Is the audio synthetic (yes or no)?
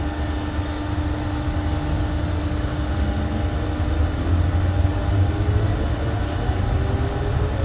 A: no